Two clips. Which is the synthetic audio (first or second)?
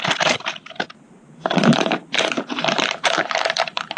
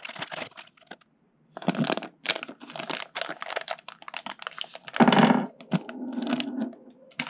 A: first